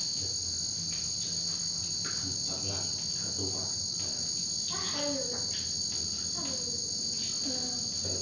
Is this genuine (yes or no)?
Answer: yes